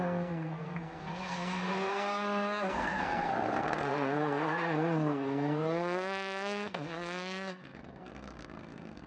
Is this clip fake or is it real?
fake